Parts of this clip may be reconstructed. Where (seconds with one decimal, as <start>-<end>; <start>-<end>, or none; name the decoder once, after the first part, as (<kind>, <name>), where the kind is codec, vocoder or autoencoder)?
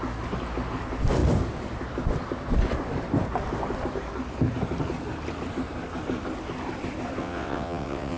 7.2-8.2 (vocoder, WaveNeXt)